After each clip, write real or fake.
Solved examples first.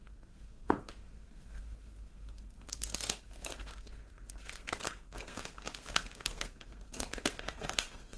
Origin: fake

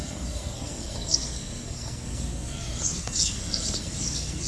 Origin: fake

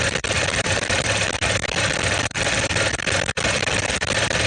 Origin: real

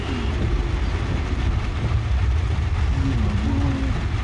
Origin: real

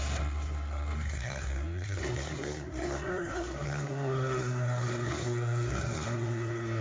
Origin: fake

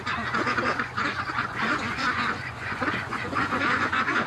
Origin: fake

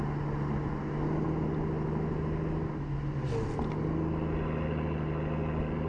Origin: real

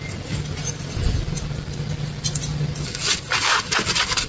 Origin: real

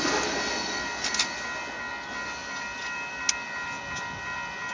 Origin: real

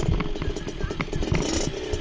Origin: real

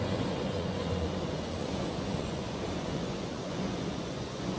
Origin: fake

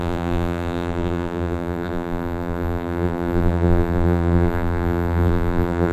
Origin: fake